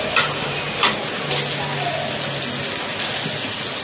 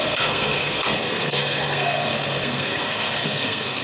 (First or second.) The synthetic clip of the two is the second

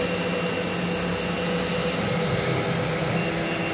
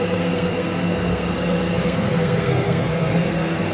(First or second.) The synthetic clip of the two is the second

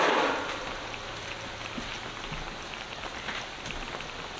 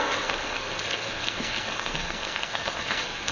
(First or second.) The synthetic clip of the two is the second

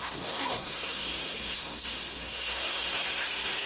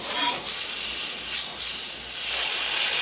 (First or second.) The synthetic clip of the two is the first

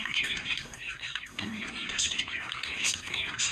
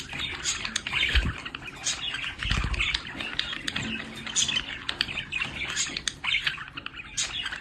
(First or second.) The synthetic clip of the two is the first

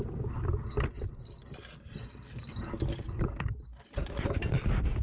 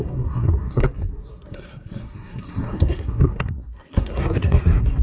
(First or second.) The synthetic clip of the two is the second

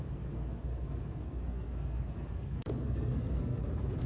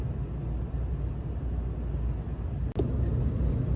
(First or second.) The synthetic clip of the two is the first